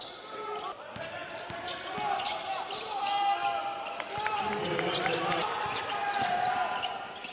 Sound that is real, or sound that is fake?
real